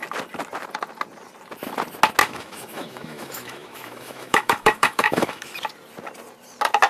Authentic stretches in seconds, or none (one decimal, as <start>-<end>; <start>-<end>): 0.0-2.2; 5.6-6.9